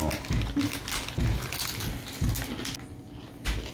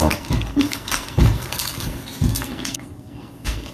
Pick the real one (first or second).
first